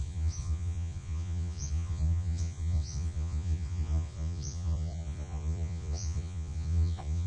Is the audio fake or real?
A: fake